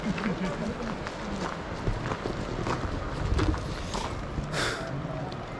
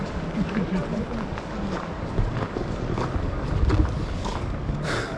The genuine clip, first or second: first